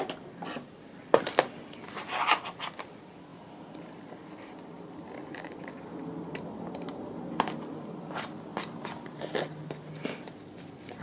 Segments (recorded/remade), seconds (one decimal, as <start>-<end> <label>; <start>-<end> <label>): 0.0-5.2 recorded; 5.2-5.8 remade; 5.8-11.0 recorded